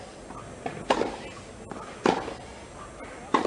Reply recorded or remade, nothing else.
recorded